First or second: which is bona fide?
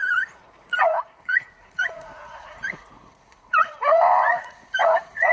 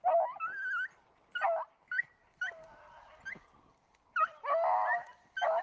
second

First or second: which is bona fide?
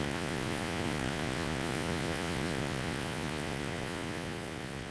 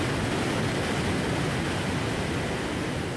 second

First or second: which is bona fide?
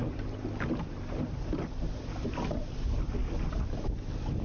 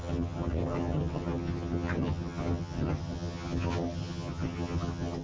first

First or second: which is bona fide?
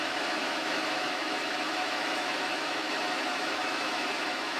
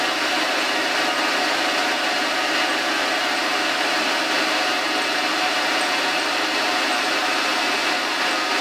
second